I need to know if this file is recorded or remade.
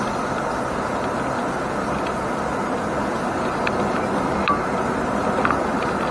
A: recorded